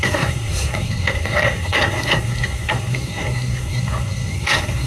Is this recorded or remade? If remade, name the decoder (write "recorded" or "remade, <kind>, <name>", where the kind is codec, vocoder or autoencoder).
remade, codec, SNAC